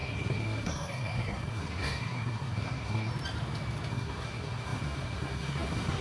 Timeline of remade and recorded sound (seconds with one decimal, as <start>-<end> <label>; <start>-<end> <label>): 0.0-3.1 remade; 3.1-3.9 recorded; 3.9-6.0 remade